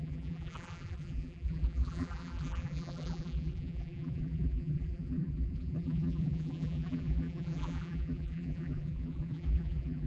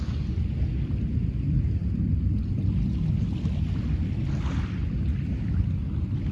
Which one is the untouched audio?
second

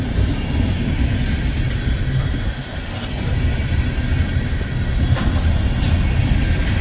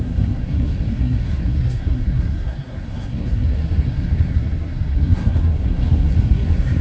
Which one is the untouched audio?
first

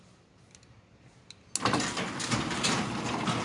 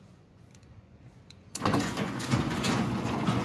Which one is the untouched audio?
first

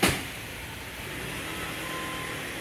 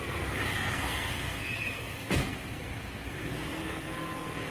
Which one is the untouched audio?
first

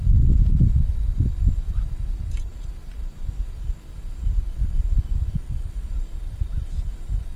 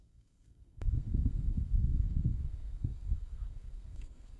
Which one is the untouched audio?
first